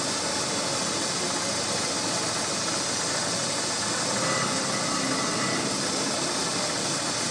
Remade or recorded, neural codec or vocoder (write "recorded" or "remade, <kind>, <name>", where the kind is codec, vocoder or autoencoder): recorded